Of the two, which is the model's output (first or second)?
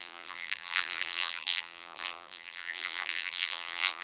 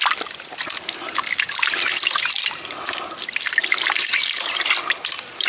first